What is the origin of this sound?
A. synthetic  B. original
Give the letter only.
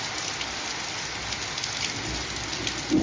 B